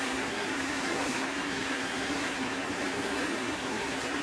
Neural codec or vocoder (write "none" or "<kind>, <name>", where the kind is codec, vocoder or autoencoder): codec, SNAC